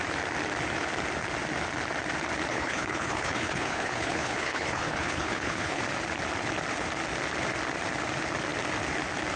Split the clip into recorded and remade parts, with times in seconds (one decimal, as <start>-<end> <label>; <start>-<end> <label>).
0.0-2.5 recorded; 2.5-5.8 remade; 5.8-9.4 recorded